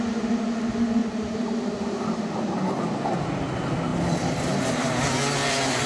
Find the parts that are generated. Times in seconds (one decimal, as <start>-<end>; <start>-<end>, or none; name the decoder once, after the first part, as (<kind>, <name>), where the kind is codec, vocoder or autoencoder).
1.0-2.5 (vocoder, BigVGAN v2)